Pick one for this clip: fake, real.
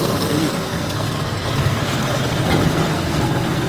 fake